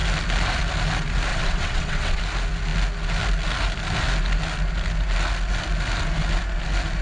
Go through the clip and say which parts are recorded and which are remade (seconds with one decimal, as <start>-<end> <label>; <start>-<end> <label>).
0.0-1.3 recorded; 1.3-2.2 remade; 2.2-7.0 recorded